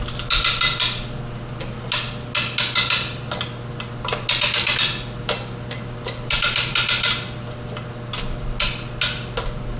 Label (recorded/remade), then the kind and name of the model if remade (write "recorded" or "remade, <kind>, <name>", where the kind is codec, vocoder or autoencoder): recorded